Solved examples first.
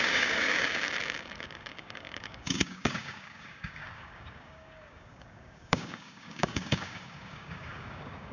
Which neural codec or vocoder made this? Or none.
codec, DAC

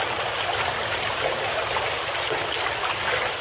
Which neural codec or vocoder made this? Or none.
none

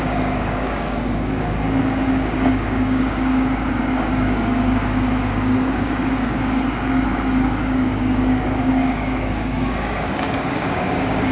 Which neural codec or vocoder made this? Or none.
codec, DAC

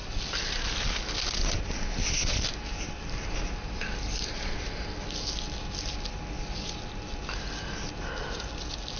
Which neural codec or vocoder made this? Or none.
none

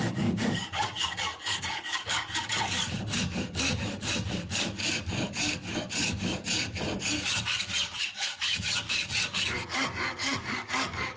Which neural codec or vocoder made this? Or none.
codec, DAC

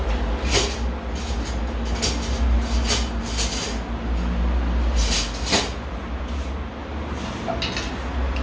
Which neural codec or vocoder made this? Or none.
none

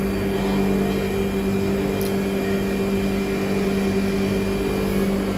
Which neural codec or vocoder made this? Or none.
none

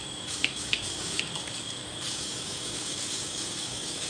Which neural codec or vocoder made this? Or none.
codec, DAC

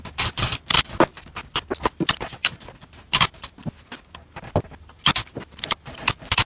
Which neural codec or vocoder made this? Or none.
none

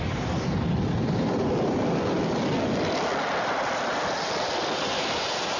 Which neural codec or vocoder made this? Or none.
none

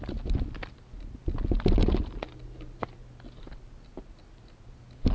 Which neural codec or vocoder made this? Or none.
none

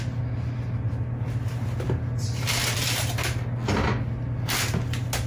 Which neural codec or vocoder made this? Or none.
none